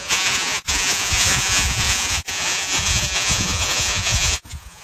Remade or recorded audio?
remade